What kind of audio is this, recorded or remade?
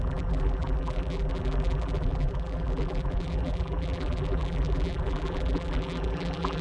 remade